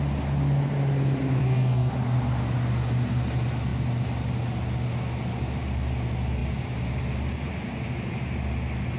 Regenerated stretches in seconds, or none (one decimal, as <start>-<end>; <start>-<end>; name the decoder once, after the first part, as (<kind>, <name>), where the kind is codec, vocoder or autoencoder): 1.4-1.9 (codec, SNAC)